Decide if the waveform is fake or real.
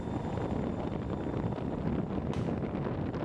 real